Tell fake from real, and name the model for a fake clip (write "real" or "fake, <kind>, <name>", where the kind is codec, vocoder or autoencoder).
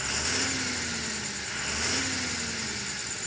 real